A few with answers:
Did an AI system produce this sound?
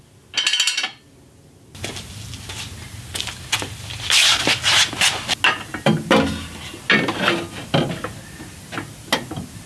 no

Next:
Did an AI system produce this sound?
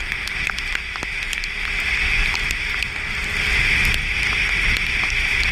no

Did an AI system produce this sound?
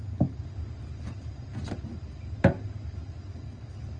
no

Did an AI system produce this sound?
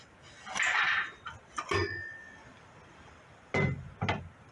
no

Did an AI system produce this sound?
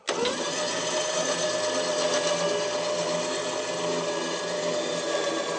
no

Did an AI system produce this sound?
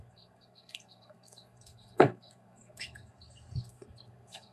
yes